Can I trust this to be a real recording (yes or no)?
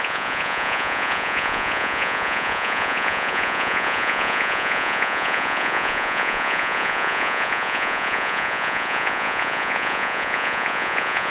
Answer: no